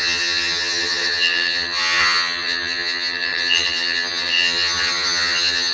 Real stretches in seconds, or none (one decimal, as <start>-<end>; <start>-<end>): none